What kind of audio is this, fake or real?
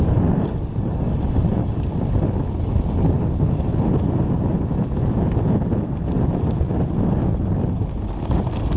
real